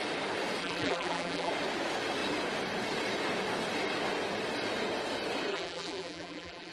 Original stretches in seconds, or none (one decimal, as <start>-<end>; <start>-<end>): 0.0-0.6; 1.5-5.5